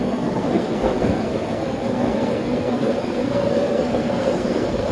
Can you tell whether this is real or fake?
fake